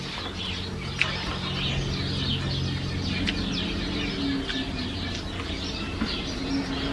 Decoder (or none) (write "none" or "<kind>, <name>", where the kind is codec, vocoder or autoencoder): none